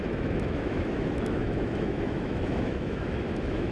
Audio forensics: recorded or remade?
remade